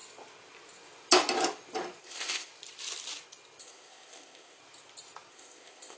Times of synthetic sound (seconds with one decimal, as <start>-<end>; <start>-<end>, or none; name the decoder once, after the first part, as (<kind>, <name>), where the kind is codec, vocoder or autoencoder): 2.0-2.5 (codec, ZipCodec); 3.6-4.6; 5.3-6.0